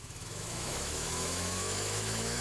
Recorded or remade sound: remade